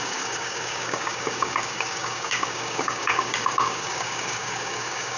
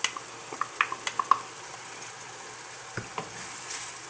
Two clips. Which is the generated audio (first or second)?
first